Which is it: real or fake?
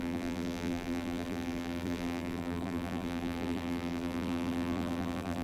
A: fake